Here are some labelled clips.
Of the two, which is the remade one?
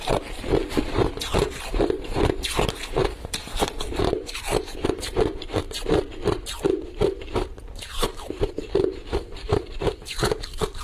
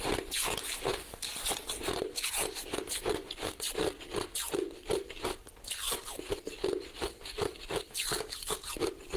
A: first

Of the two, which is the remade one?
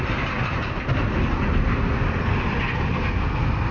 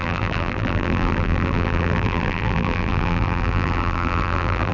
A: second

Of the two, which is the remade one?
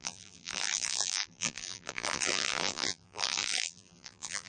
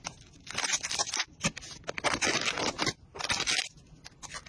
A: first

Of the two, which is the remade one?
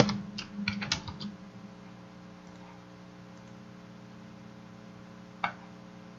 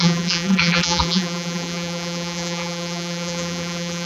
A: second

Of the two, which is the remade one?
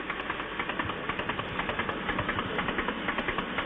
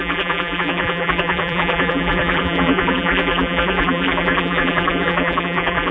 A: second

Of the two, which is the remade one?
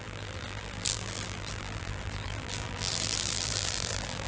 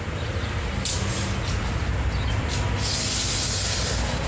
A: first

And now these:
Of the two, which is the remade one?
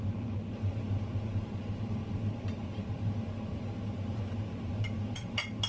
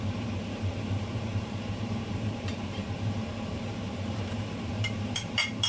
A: second